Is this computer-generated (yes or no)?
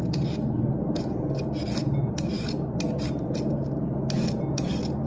no